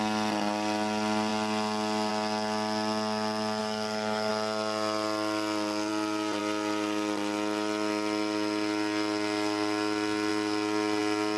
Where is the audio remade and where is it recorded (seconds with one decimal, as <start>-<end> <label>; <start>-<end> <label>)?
0.0-3.6 recorded; 3.6-4.3 remade; 4.3-11.4 recorded